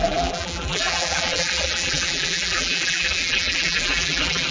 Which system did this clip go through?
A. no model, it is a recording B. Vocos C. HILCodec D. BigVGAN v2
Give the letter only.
D